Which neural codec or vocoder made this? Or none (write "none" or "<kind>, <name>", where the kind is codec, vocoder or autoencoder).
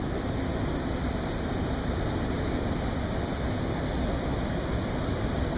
none